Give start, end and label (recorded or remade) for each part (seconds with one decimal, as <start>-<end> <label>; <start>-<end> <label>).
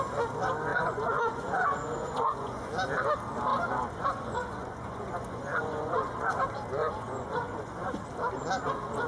0.0-0.7 recorded; 0.7-2.7 remade; 2.7-3.5 recorded; 3.5-6.3 remade; 6.3-6.8 recorded; 6.8-8.0 remade; 8.0-9.1 recorded